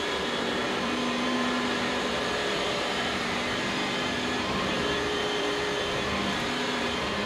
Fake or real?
fake